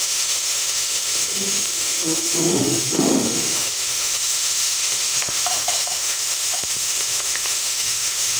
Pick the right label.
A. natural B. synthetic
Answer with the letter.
B